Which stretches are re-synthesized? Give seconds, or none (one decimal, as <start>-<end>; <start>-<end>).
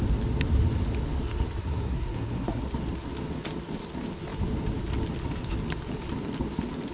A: 1.6-2.6